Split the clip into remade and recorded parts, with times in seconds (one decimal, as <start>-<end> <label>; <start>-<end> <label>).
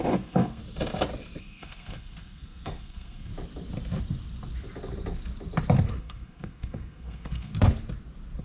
0.0-0.6 remade; 0.6-1.4 recorded; 1.4-3.3 remade; 3.3-6.0 recorded; 6.0-7.5 remade; 7.5-8.4 recorded